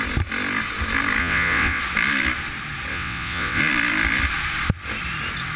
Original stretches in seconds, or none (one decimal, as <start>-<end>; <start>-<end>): 0.0-1.2; 1.8-2.9; 3.6-5.6